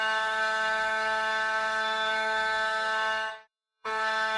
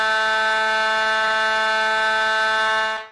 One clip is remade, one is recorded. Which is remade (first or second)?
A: first